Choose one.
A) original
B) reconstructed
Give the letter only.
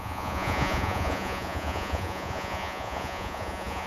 B